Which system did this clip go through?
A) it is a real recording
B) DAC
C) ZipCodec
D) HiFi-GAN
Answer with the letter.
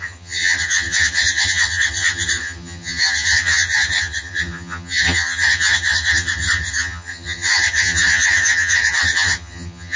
D